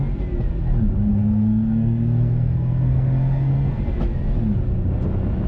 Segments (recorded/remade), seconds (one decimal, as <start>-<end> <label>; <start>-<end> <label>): 0.0-1.1 recorded; 1.1-3.8 remade; 3.8-5.5 recorded